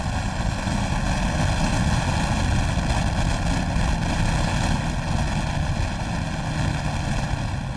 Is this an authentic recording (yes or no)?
yes